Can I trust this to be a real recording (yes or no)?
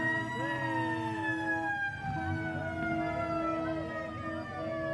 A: yes